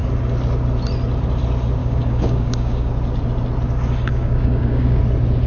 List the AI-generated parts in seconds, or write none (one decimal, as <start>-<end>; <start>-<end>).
1.8-2.9; 4.1-5.0